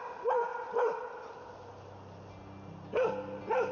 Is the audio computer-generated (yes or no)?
no